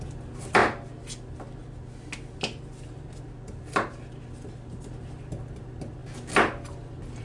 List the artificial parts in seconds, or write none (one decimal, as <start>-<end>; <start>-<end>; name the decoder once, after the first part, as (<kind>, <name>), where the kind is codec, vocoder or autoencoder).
none

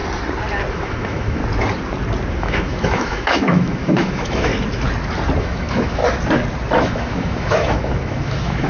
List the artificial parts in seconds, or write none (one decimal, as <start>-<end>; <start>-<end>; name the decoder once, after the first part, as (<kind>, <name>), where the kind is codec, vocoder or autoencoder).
0.7-1.4 (autoencoder, DAC-VAE); 2.4-4.5; 5.4-6.0; 6.8-8.7

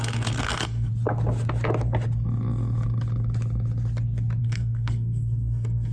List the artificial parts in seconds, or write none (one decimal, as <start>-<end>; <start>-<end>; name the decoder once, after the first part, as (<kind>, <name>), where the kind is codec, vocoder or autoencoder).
0.0-0.9 (codec, SNAC); 4.4-5.9